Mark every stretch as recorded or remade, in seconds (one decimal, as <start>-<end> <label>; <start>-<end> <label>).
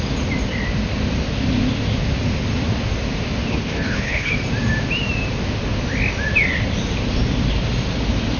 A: 0.0-3.5 recorded; 3.5-4.3 remade; 4.3-8.4 recorded